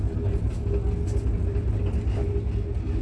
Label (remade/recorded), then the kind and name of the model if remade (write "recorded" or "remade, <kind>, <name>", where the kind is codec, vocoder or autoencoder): recorded